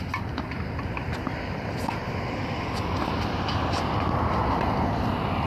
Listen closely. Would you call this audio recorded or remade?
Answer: recorded